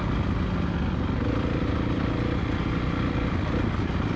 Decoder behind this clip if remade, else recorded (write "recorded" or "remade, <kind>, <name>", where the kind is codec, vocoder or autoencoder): recorded